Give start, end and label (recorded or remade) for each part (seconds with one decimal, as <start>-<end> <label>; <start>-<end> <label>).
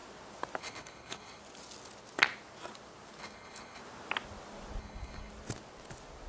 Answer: 0.0-0.6 recorded; 0.6-1.4 remade; 1.4-3.2 recorded; 3.2-3.8 remade; 3.8-4.8 recorded; 4.8-5.3 remade; 5.3-6.3 recorded